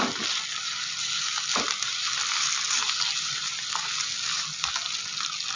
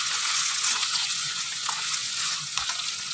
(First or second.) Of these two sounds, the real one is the first